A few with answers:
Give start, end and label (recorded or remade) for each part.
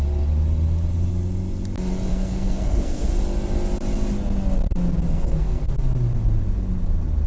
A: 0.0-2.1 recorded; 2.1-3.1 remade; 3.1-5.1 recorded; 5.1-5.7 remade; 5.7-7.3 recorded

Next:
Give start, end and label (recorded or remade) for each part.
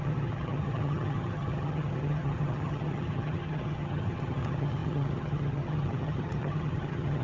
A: 0.0-7.2 remade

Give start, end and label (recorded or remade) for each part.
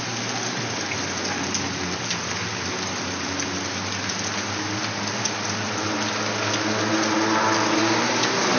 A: 0.0-8.6 recorded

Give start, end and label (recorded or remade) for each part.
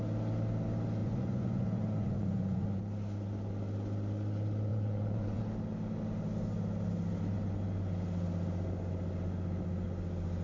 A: 0.0-1.0 recorded; 1.0-2.8 remade; 2.8-4.7 recorded; 4.7-5.4 remade; 5.4-10.4 recorded